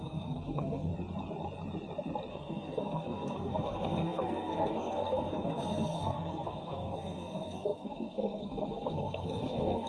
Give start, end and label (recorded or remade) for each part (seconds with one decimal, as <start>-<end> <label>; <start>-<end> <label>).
0.0-0.9 remade; 0.9-2.3 recorded; 2.3-9.9 remade